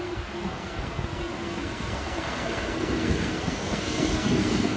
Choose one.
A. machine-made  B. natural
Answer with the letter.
A